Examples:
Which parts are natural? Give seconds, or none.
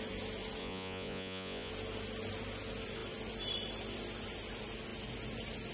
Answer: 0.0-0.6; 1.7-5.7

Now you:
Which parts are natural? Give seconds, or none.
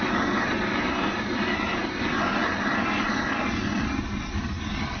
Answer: 0.0-5.0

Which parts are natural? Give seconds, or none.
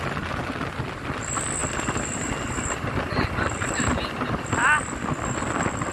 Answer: 0.0-5.9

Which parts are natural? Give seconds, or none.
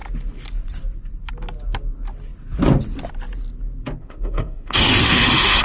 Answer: 0.0-4.0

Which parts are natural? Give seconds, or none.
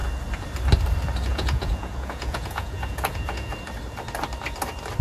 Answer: 0.0-1.3; 3.5-5.0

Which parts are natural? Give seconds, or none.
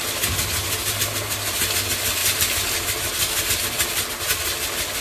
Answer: 0.0-0.8; 1.6-5.0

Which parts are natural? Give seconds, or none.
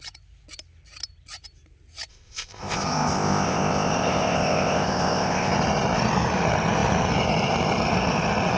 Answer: 0.0-2.1; 5.5-8.6